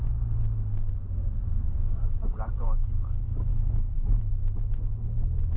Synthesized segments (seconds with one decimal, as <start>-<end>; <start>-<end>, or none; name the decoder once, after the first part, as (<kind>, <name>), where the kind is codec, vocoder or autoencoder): 3.5-4.6 (autoencoder, DAC-VAE)